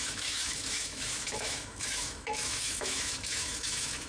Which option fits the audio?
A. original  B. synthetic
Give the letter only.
B